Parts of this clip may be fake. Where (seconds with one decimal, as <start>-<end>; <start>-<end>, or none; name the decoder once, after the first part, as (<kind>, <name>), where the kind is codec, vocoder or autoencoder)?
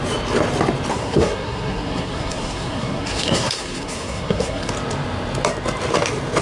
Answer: 0.9-4.7 (codec, SNAC)